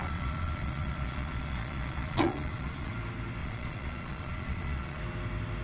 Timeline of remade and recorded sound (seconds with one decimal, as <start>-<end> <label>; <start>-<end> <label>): 0.0-2.9 remade; 2.9-3.4 recorded; 3.4-5.0 remade; 5.0-5.6 recorded